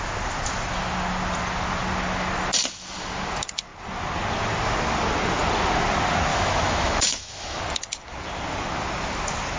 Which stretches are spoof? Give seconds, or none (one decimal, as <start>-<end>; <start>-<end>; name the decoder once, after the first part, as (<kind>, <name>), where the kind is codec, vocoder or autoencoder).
6.3-7.6 (autoencoder, DAC-VAE)